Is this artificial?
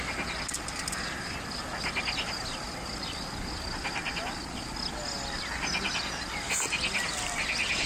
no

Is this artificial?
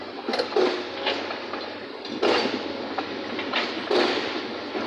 no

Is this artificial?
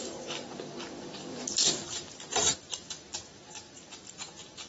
yes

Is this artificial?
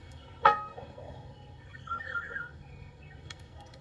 yes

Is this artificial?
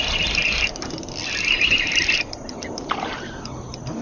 no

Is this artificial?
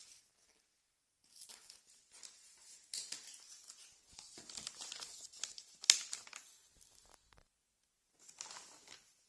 no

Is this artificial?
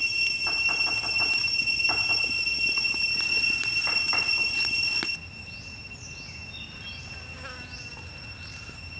no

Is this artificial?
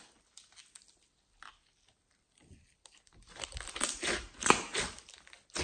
no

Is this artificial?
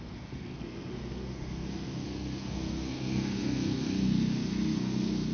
yes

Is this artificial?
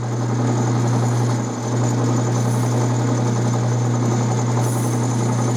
no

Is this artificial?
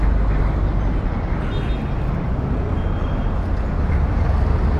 no